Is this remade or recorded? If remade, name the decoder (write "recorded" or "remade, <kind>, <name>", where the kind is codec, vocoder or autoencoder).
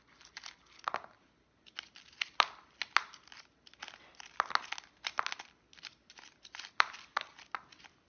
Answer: recorded